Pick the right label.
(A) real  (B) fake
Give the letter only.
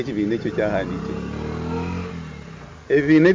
A